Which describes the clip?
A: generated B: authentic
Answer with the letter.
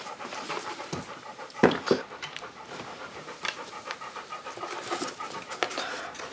A